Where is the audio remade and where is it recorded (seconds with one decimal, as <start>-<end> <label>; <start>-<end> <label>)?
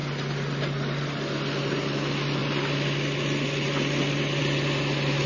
0.0-5.3 recorded